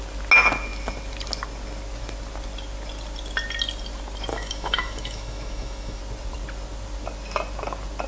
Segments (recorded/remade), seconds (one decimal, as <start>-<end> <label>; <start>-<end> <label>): 0.0-4.3 recorded; 4.3-6.0 remade; 6.0-8.1 recorded